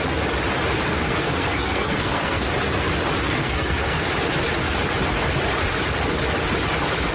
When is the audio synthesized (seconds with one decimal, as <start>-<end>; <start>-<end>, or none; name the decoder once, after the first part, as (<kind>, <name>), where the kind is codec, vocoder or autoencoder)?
1.0-2.5 (codec, SNAC); 3.4-4.1